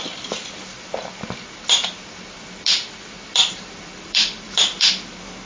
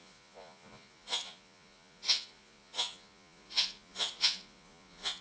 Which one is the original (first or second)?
first